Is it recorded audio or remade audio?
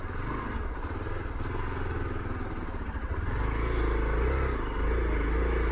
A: recorded